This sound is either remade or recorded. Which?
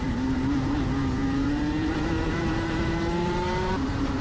remade